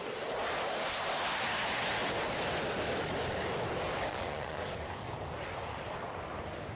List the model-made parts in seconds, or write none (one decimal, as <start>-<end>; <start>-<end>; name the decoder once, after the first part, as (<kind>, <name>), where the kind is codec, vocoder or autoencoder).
4.1-4.6 (vocoder, Vocos)

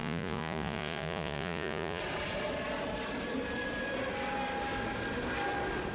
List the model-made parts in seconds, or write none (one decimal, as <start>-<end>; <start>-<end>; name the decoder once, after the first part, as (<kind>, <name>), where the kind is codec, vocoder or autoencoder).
0.0-2.0 (vocoder, Vocos)